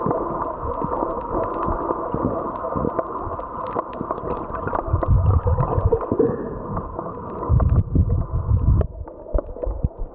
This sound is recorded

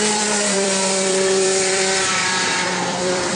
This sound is remade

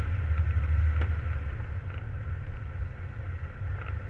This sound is recorded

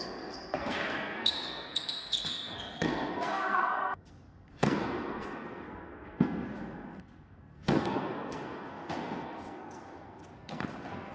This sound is remade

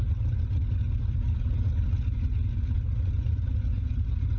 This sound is recorded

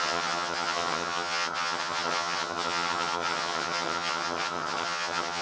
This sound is remade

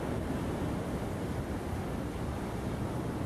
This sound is recorded